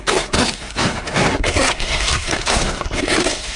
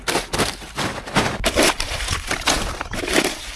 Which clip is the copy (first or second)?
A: first